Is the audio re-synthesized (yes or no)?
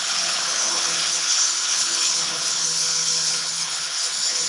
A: yes